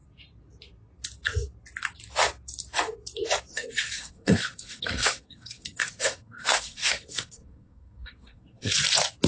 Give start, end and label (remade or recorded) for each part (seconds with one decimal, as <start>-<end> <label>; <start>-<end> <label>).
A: 0.0-3.5 recorded; 3.5-8.7 remade; 8.7-9.3 recorded